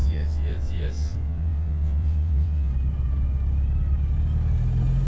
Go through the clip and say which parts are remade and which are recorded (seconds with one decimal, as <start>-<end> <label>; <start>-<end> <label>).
0.0-2.7 remade; 2.7-5.1 recorded